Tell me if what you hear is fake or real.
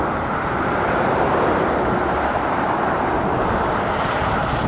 fake